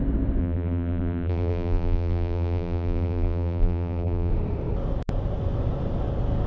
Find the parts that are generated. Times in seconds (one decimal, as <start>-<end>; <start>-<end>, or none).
0.4-4.3